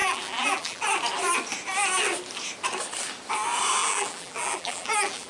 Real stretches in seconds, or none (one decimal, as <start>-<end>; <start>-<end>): 0.8-3.8